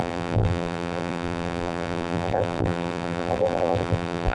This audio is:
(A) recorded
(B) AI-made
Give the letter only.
B